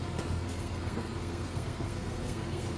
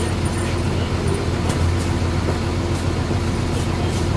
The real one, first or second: second